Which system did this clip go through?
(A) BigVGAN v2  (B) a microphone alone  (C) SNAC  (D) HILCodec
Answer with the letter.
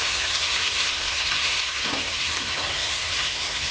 C